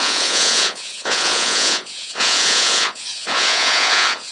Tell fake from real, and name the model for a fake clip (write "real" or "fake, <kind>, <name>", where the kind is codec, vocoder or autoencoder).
fake, vocoder, Vocos